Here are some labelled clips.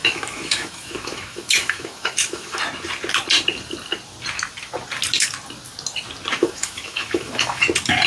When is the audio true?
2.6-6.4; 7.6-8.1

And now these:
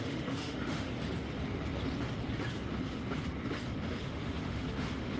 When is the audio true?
0.9-4.0

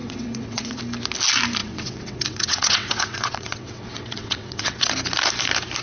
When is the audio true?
0.8-1.6; 4.9-5.8

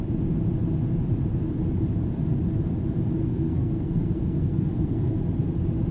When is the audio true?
0.0-3.2; 5.2-5.9

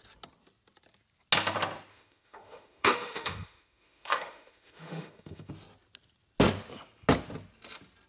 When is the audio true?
0.0-1.9; 5.5-8.1

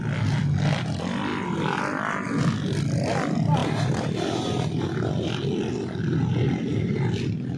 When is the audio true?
0.0-3.6; 4.1-7.6

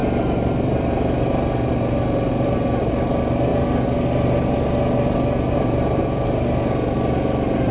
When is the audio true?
0.0-7.7